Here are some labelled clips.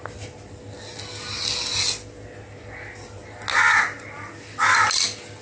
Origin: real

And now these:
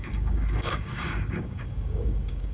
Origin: fake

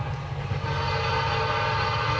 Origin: real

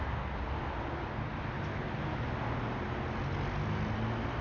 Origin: real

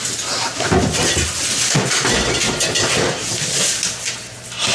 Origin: real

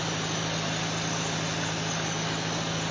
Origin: real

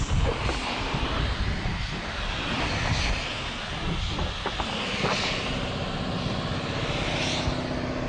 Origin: real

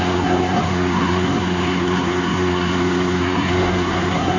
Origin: fake